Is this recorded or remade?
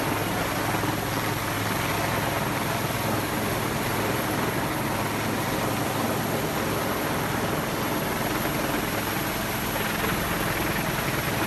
recorded